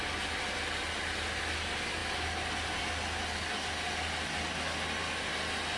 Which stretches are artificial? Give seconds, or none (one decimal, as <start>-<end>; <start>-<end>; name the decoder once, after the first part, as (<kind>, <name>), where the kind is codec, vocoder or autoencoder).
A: none